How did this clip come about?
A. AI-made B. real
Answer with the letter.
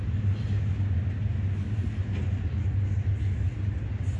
B